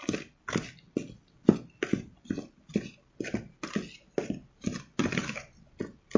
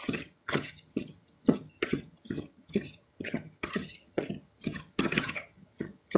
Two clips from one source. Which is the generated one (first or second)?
second